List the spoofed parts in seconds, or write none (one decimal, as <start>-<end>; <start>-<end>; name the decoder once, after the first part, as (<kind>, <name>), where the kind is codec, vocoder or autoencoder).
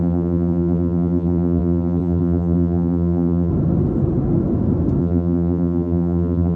0.0-3.5 (vocoder, BigVGAN v2); 5.0-6.6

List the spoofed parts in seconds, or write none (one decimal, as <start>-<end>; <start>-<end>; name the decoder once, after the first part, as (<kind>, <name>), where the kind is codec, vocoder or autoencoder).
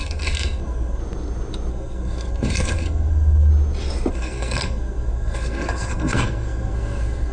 0.0-1.0 (codec, SNAC); 1.7-3.5; 4.1-7.3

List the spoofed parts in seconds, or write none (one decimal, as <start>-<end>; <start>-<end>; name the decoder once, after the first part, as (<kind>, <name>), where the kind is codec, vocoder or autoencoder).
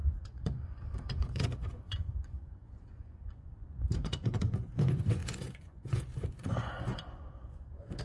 0.0-8.0 (vocoder, Vocos)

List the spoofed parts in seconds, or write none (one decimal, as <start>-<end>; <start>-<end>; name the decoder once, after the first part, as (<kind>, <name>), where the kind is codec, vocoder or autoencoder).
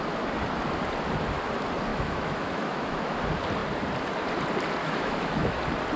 1.9-3.2 (autoencoder, DAC-VAE); 4.8-5.6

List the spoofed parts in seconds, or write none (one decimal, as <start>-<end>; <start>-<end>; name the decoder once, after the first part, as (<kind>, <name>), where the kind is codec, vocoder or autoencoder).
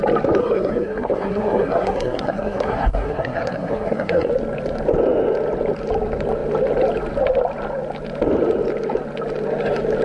0.4-4.3 (codec, SNAC)